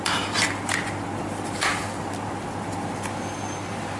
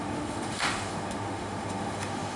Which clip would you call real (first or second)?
first